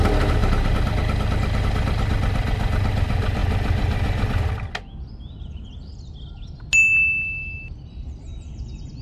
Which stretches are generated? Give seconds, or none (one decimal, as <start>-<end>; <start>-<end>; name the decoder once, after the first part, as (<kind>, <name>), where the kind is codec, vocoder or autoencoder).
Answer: none